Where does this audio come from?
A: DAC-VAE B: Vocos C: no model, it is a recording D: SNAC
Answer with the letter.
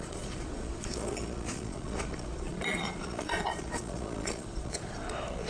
B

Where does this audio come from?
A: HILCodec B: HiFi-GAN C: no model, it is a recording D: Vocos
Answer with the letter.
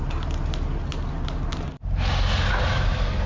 C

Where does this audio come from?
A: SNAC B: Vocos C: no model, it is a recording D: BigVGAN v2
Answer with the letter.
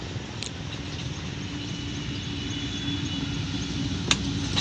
C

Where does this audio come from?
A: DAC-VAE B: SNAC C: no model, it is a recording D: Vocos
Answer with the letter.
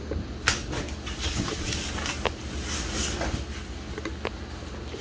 C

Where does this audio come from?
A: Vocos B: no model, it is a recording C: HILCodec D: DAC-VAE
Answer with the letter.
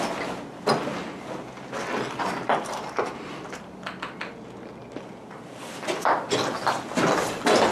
B